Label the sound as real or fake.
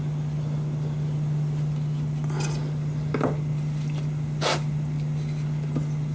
real